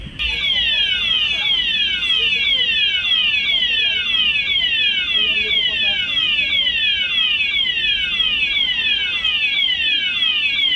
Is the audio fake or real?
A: real